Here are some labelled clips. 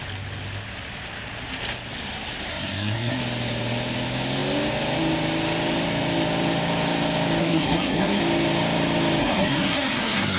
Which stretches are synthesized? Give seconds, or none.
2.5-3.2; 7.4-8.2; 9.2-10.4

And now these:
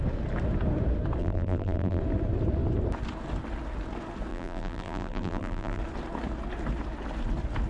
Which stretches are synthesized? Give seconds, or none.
1.2-2.0; 4.3-5.8

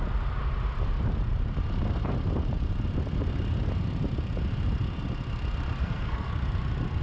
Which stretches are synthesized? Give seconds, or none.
5.8-6.3

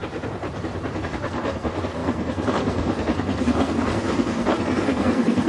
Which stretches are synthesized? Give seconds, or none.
0.9-5.5

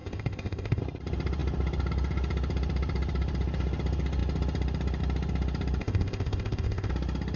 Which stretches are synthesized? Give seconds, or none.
0.0-0.8; 5.8-6.9

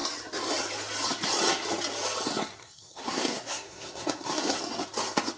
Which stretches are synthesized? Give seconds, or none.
2.6-4.6

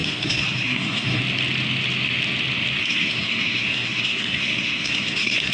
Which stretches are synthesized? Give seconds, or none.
0.0-1.2; 2.8-5.5

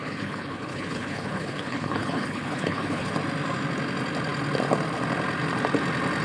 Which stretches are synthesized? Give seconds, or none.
0.0-3.1